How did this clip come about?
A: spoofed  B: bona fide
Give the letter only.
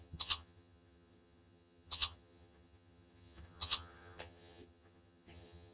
A